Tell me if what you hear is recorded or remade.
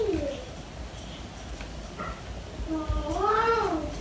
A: recorded